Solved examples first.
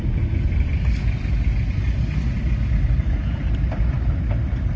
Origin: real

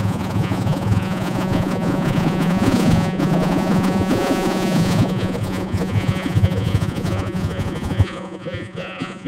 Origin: fake